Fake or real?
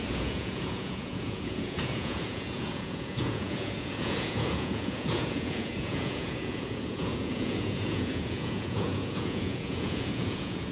fake